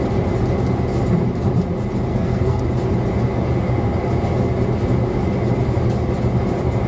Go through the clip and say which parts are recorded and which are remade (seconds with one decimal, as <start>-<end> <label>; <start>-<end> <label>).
0.0-2.1 recorded; 2.1-2.6 remade; 2.6-6.9 recorded

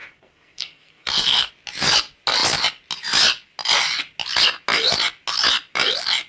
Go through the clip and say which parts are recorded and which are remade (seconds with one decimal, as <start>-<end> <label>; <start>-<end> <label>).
0.0-1.5 remade; 1.5-6.3 recorded